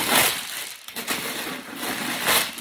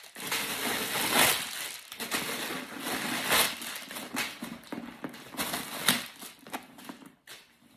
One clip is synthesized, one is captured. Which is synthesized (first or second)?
first